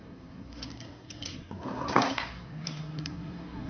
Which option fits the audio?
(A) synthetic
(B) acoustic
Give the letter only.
A